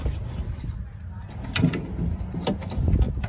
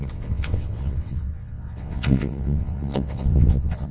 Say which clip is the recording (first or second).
first